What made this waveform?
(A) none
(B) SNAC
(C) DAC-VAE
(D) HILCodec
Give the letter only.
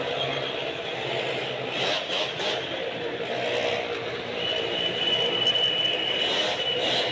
A